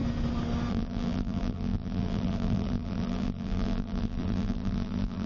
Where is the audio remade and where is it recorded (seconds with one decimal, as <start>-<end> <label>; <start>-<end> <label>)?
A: 0.0-0.7 recorded; 0.7-5.3 remade